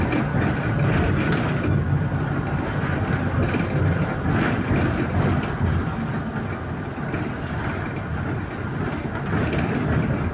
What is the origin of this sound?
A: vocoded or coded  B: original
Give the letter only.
B